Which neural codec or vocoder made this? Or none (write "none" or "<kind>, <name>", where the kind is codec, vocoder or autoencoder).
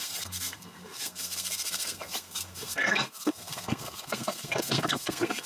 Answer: codec, SNAC